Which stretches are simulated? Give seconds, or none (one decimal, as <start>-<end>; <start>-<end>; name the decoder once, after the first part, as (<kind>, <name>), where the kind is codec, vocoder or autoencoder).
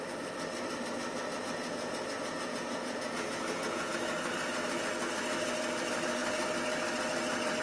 1.6-3.9 (vocoder, Vocos)